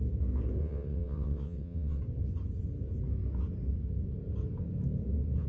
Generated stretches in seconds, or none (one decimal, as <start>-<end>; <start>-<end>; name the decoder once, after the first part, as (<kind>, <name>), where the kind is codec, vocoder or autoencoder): 0.6-2.0 (vocoder, WaveNeXt)